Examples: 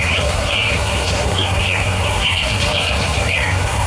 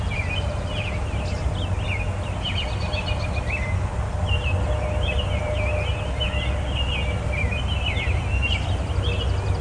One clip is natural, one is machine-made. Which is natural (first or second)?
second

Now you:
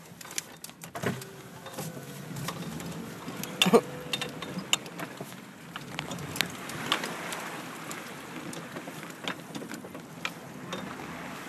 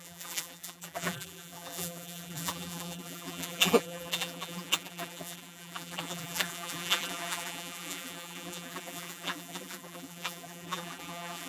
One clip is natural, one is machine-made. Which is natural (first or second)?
first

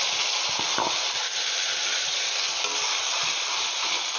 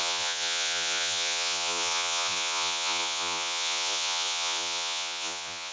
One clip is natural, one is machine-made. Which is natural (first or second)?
first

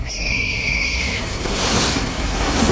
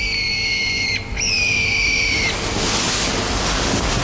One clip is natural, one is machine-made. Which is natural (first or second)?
second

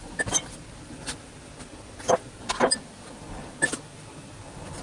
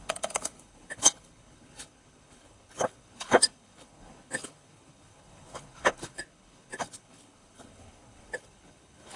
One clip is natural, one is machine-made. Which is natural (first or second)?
first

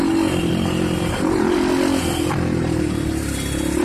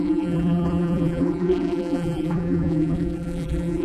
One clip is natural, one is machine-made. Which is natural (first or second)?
first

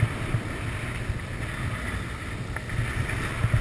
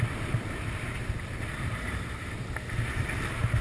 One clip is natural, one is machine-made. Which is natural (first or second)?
first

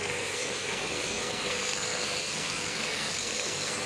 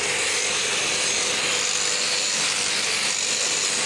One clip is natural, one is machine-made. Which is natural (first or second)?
second